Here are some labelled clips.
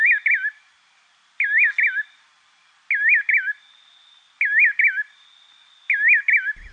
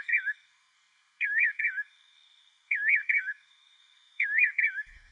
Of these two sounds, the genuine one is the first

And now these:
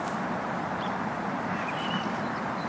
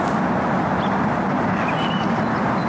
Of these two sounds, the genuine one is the second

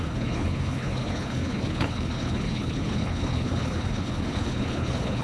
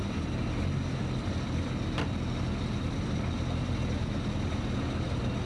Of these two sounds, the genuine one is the second